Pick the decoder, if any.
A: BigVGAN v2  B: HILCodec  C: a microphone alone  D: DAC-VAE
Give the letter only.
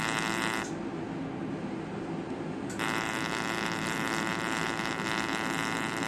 C